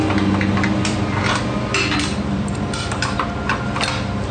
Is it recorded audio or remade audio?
recorded